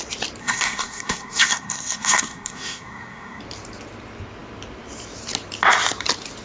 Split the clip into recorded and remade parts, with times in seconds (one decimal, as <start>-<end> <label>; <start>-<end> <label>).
0.0-0.4 recorded; 0.4-3.4 remade; 3.4-6.4 recorded